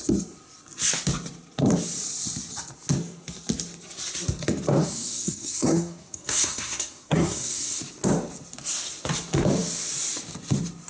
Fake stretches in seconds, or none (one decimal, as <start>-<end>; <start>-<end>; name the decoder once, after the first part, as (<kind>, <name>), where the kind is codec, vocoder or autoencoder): 4.8-7.8 (codec, SNAC)